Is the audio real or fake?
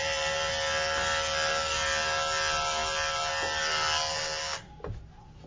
real